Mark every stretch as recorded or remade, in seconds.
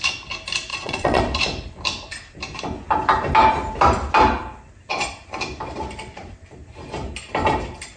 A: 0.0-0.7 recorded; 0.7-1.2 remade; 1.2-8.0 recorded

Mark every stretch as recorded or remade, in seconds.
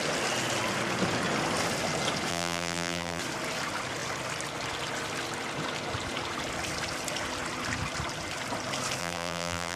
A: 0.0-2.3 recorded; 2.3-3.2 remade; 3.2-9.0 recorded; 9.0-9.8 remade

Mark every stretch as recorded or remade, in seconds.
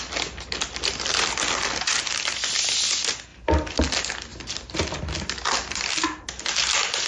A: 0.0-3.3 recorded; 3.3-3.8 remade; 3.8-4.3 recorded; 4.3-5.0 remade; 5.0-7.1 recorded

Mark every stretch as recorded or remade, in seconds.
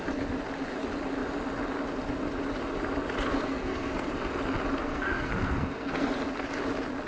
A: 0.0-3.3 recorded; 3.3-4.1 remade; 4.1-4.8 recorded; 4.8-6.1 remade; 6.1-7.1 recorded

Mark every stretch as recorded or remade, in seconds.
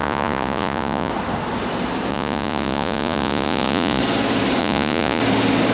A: 0.0-1.1 remade; 1.1-2.1 recorded; 2.1-4.0 remade; 4.0-4.6 recorded; 4.6-5.2 remade; 5.2-5.7 recorded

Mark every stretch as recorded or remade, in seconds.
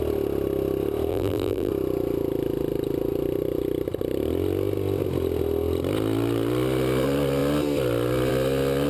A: 0.0-1.1 recorded; 1.1-1.7 remade; 1.7-8.9 recorded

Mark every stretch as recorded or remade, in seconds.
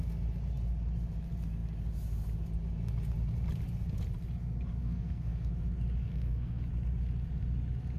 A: 0.0-4.8 recorded; 4.8-5.5 remade; 5.5-6.0 recorded; 6.0-6.6 remade; 6.6-8.0 recorded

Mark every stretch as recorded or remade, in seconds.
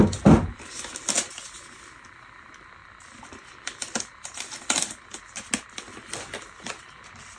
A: 0.0-2.8 recorded; 2.8-5.2 remade; 5.2-7.4 recorded